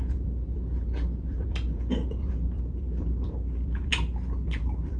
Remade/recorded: remade